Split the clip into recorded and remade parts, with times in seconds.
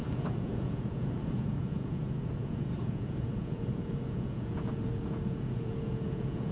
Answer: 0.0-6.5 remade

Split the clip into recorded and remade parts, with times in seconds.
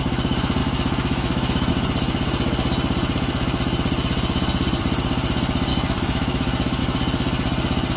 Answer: 0.0-0.6 recorded; 0.6-1.7 remade; 1.7-5.7 recorded; 5.7-6.8 remade; 6.8-8.0 recorded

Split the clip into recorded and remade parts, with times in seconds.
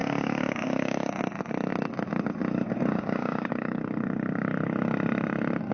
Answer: 0.0-1.1 remade; 1.1-2.9 recorded; 2.9-3.8 remade; 3.8-5.7 recorded